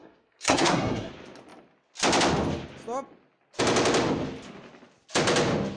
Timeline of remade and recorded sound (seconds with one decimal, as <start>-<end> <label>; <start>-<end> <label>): 0.0-1.1 remade; 1.1-5.8 recorded